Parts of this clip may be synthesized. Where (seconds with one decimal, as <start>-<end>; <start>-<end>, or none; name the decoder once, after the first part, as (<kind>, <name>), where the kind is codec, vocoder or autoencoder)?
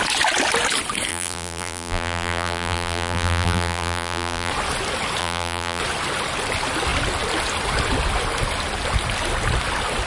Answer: 1.1-4.5 (vocoder, BigVGAN v2); 5.2-5.8